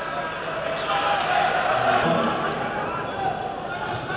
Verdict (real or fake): real